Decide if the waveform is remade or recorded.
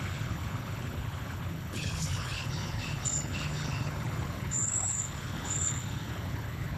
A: remade